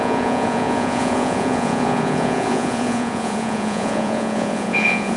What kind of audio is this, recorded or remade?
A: remade